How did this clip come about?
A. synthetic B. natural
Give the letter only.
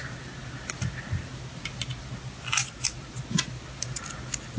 B